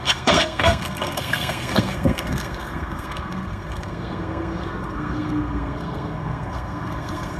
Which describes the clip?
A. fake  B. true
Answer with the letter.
A